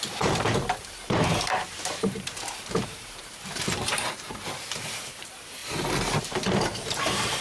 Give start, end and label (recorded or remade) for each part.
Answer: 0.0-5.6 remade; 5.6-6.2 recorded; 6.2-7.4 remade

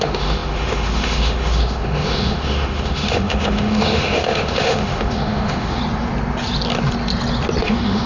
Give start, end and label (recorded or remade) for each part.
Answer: 0.0-5.8 remade; 5.8-7.6 recorded; 7.6-8.1 remade

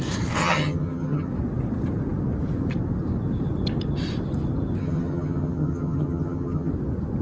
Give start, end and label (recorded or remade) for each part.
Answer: 0.0-0.4 recorded; 0.4-1.3 remade; 1.3-4.8 recorded; 4.8-6.7 remade; 6.7-7.2 recorded

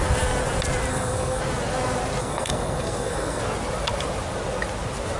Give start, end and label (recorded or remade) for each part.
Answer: 0.0-0.9 recorded; 0.9-1.4 remade; 1.4-2.2 recorded; 2.2-3.4 remade; 3.4-5.2 recorded

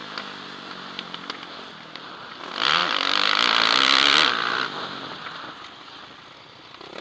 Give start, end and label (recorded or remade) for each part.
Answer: 0.0-7.0 recorded

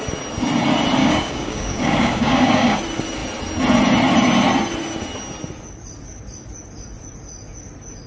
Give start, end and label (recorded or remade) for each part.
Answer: 0.0-1.0 recorded; 1.0-2.8 remade; 2.8-8.1 recorded